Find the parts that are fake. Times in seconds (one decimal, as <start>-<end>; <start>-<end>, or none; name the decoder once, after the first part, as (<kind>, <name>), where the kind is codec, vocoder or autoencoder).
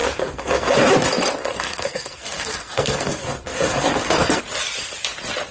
0.0-0.8 (codec, SNAC); 1.4-4.4